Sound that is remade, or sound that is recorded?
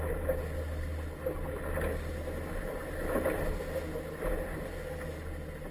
recorded